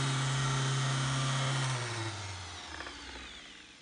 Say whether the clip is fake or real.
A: real